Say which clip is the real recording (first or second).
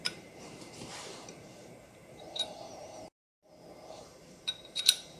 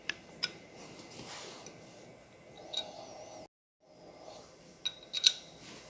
second